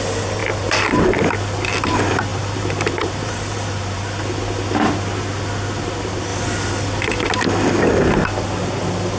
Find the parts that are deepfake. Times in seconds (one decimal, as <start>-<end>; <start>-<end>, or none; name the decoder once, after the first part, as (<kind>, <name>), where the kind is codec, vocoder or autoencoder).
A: 0.4-1.2 (vocoder, BigVGAN v2); 2.3-4.0